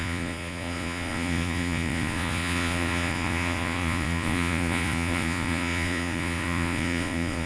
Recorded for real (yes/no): no